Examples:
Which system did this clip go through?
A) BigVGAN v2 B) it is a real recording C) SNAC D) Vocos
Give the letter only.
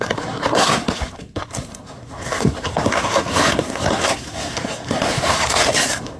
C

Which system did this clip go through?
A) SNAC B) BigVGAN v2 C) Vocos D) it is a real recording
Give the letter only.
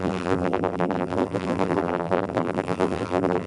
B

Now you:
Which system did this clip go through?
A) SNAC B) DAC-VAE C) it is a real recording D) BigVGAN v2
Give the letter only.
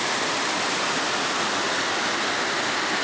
C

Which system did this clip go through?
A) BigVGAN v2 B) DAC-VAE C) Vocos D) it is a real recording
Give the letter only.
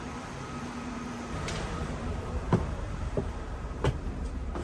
A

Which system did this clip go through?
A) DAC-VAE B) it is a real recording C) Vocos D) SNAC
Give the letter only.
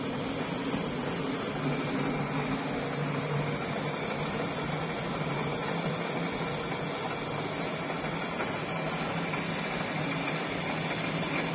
B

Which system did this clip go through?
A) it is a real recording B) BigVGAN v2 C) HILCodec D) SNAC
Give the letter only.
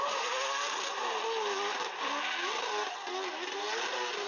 A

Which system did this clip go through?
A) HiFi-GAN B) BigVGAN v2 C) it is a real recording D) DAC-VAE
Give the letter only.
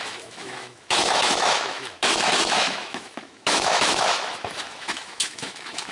D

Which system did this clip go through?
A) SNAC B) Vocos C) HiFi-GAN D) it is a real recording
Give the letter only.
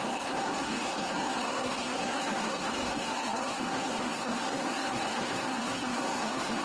A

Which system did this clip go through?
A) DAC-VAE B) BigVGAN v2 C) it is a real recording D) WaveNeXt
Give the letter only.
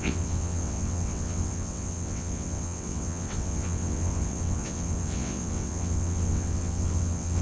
D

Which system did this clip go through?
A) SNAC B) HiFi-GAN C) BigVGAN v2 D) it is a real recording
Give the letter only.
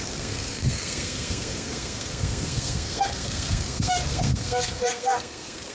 A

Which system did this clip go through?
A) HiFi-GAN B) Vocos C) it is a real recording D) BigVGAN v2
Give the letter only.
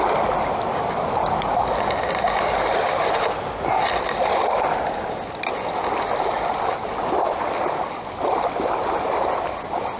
C